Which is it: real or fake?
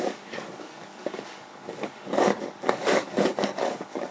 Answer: fake